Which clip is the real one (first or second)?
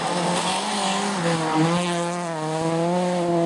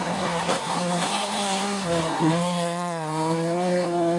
first